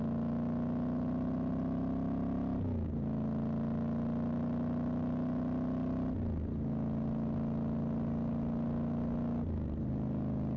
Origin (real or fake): real